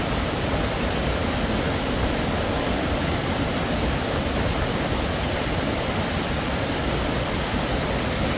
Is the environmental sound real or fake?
fake